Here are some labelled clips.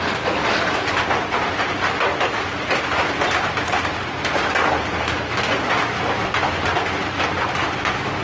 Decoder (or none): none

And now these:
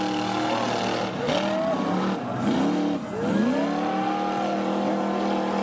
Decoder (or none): none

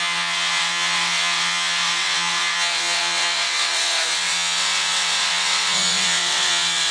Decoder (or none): vocoder, WaveNeXt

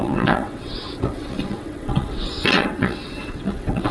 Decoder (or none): vocoder, WaveNeXt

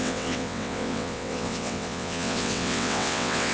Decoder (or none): vocoder, WaveNeXt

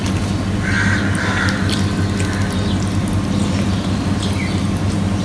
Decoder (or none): none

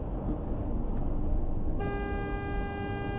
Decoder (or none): none